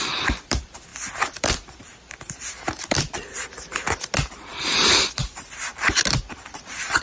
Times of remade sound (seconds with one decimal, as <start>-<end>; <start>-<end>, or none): 0.0-7.0